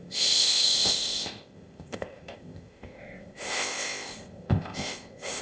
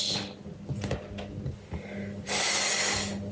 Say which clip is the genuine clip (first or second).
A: second